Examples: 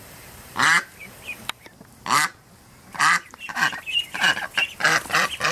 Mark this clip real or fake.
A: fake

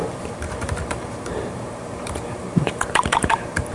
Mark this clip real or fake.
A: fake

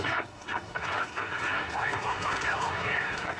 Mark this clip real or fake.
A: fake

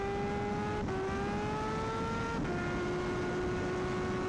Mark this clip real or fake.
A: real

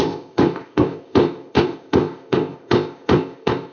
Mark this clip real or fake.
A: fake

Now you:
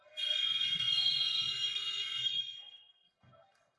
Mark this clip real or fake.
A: fake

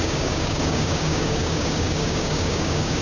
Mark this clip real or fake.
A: fake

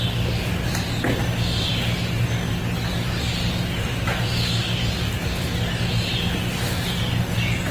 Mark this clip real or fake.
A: real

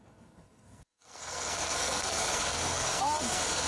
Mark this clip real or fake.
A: fake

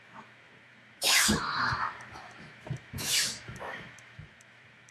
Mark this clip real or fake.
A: fake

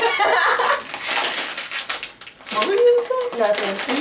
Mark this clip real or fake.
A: real